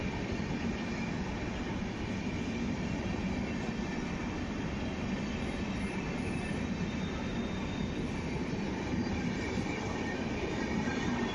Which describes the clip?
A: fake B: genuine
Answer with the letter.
A